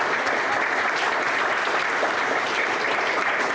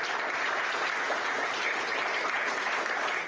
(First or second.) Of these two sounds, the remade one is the first